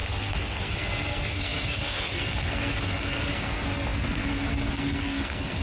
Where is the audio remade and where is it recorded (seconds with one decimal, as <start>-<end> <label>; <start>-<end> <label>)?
0.0-5.6 remade

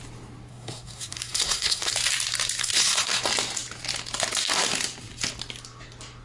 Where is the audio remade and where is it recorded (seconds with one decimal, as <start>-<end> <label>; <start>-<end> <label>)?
0.0-0.5 recorded; 0.5-1.9 remade; 1.9-2.6 recorded; 2.6-3.2 remade; 3.2-6.2 recorded

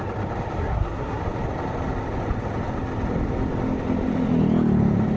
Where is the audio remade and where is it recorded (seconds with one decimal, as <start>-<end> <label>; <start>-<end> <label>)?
0.0-0.6 recorded; 0.6-1.2 remade; 1.2-5.2 recorded

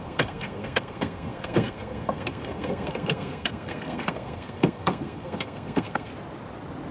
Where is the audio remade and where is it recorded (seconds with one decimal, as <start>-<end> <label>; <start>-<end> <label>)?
0.0-6.1 remade; 6.1-6.9 recorded

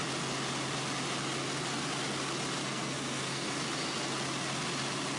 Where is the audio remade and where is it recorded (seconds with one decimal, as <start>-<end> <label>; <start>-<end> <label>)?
0.0-2.6 recorded; 2.6-3.5 remade; 3.5-5.2 recorded

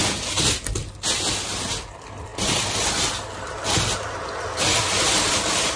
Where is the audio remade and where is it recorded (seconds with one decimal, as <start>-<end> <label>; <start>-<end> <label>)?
0.0-5.8 recorded

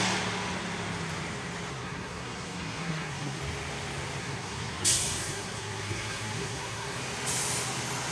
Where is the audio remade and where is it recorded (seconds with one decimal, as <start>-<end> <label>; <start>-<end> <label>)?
0.0-1.7 recorded; 1.7-3.4 remade; 3.4-4.2 recorded; 4.2-7.0 remade; 7.0-8.1 recorded

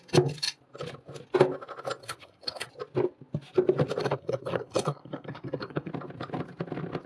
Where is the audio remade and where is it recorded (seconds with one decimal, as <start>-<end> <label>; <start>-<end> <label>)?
0.0-2.0 recorded; 2.0-2.7 remade; 2.7-4.0 recorded; 4.0-5.9 remade; 5.9-7.1 recorded